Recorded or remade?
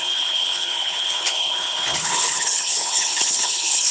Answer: remade